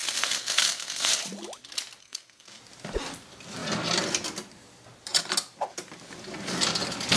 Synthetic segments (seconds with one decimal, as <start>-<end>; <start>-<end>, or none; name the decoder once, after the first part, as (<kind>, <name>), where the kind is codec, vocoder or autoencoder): 0.0-1.1 (codec, SNAC); 2.0-2.6